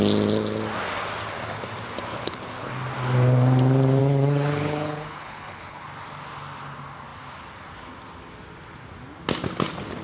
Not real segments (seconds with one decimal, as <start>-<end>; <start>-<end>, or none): 2.1-2.7; 4.0-5.8